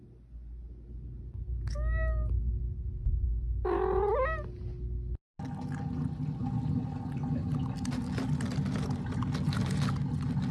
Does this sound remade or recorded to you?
recorded